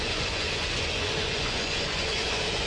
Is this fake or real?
fake